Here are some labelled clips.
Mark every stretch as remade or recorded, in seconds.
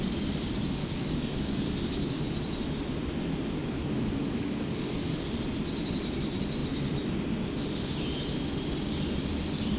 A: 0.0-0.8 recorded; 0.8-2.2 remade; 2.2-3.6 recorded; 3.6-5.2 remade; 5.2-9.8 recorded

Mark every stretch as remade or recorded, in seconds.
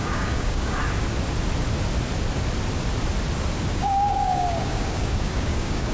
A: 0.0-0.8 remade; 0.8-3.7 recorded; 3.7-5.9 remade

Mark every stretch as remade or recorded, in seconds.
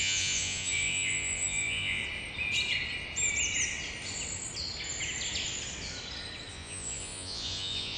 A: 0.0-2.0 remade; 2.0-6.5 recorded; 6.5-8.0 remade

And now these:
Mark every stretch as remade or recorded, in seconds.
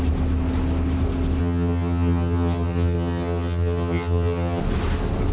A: 0.0-1.4 recorded; 1.4-4.6 remade; 4.6-5.3 recorded